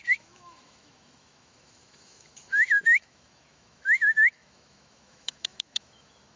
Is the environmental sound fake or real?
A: fake